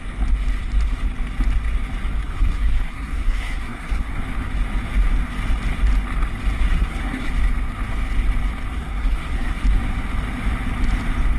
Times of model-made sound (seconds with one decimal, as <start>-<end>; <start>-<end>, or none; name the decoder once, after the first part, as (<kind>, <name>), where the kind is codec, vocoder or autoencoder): 2.2-4.2 (codec, SNAC); 6.7-7.3; 8.7-9.6